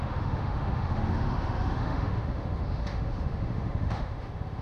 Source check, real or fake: fake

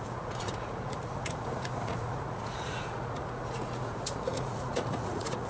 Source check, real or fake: fake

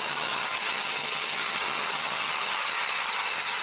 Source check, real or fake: fake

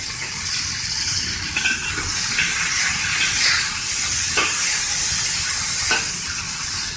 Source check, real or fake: real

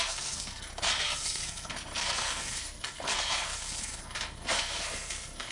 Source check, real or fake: fake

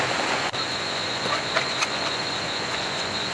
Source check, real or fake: fake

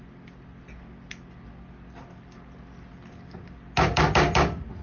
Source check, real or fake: real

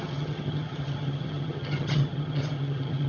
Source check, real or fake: fake